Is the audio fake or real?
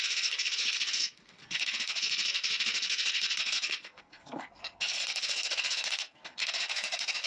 fake